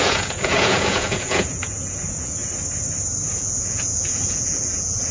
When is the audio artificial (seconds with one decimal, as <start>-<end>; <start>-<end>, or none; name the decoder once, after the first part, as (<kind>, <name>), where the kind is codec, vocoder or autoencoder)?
0.0-2.4 (vocoder, Vocos); 3.3-5.1